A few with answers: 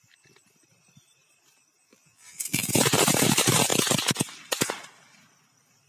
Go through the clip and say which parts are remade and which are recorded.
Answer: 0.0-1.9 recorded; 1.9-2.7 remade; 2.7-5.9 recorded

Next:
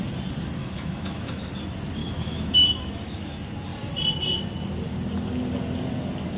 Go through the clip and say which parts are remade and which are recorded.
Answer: 0.0-0.6 recorded; 0.6-1.5 remade; 1.5-2.0 recorded; 2.0-3.2 remade; 3.2-6.4 recorded